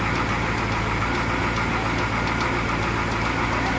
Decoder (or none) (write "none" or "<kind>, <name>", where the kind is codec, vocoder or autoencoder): none